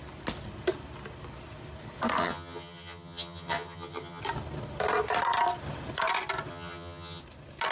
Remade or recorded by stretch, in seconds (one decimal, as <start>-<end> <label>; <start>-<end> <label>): 0.0-2.2 recorded; 2.2-4.2 remade; 4.2-6.5 recorded; 6.5-7.2 remade; 7.2-7.7 recorded